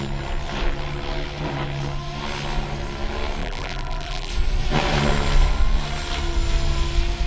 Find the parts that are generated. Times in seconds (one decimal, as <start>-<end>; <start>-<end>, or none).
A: 3.4-4.3